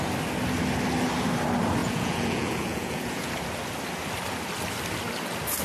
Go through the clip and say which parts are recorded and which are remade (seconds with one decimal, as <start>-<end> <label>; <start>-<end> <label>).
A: 0.0-1.8 recorded; 1.8-3.3 remade; 3.3-5.6 recorded